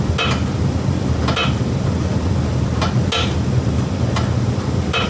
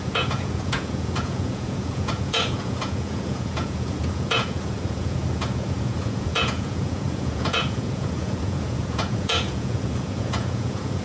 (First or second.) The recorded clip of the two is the first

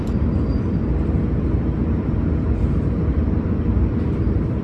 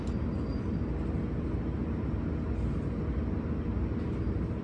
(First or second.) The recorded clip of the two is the second